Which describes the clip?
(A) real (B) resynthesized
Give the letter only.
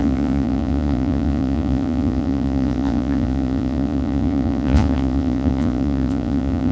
B